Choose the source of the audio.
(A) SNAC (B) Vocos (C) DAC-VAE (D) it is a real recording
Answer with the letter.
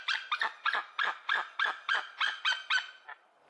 D